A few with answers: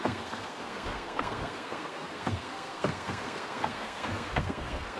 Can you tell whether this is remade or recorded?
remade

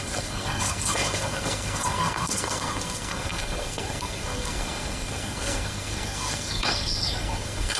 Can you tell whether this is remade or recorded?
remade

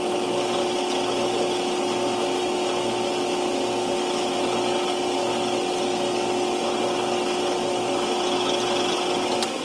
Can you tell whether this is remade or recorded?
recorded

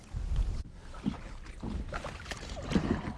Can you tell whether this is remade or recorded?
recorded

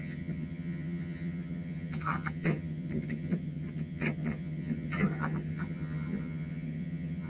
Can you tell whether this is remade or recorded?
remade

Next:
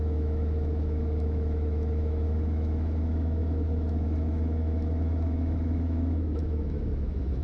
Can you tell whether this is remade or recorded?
remade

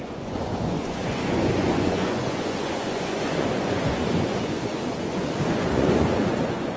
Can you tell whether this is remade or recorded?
remade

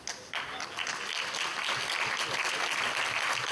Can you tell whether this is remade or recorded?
recorded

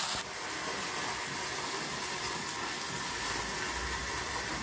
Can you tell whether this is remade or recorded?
recorded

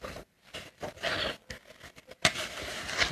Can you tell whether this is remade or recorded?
recorded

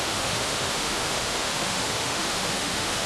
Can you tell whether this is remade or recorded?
remade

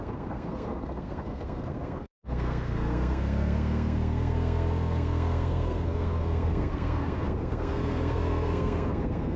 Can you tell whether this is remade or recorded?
remade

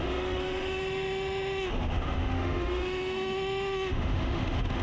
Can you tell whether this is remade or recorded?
remade